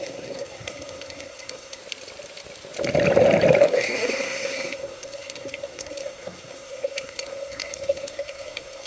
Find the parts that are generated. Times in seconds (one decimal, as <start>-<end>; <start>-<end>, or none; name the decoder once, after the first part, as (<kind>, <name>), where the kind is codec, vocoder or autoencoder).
0.0-1.8 (codec, SNAC); 3.6-8.9